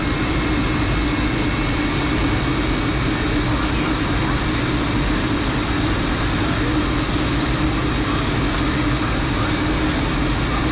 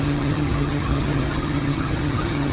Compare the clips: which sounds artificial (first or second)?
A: second